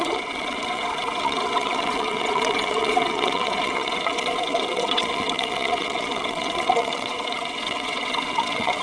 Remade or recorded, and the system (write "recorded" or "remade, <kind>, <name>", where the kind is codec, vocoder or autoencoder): remade, vocoder, WaveNeXt